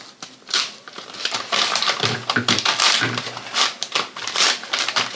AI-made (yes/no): yes